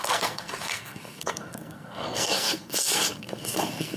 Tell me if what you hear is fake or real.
fake